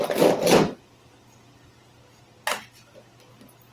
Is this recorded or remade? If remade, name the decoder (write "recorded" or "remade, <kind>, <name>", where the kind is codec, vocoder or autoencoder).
recorded